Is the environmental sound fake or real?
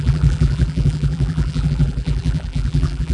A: fake